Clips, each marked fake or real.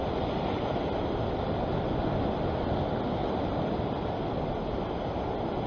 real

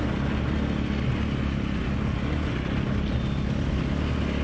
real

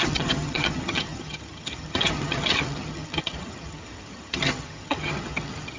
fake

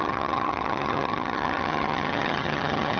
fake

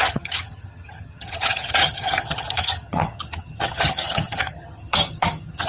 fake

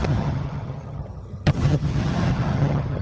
fake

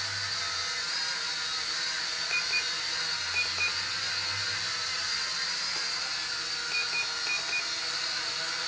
real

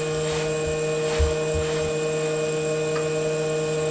real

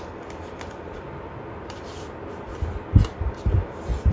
real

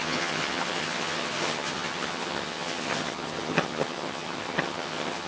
fake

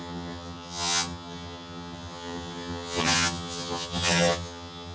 fake